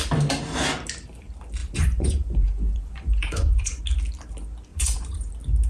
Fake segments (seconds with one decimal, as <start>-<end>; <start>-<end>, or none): 1.6-3.8; 4.7-5.3